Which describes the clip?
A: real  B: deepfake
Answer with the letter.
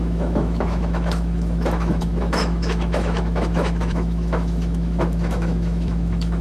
B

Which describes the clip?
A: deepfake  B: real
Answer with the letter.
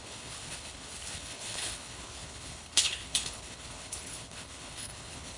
A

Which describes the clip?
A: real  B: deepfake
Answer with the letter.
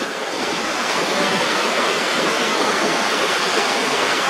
B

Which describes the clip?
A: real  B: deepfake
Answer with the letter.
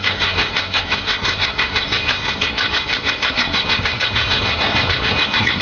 B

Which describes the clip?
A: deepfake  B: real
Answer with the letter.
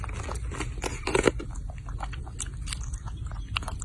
B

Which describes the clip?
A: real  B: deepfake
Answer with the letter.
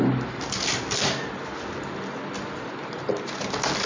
A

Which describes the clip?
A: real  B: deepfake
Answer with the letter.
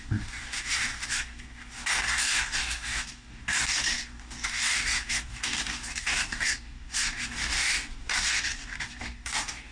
B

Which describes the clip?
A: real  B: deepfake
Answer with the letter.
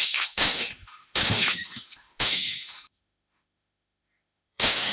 B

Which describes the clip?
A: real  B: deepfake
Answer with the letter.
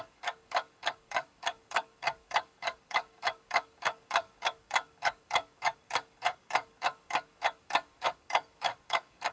B